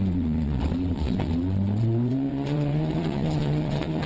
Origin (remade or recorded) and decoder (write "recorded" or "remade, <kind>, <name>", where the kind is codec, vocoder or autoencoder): remade, vocoder, WaveNeXt